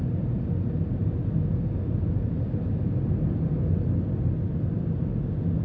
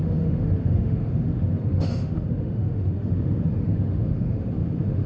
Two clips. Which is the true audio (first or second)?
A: first